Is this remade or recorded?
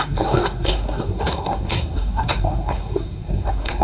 remade